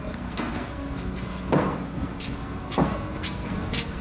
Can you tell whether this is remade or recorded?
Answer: remade